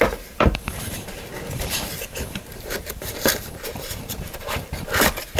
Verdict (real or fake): fake